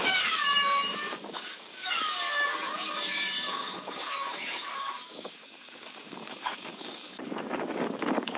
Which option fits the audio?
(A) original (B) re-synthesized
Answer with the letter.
B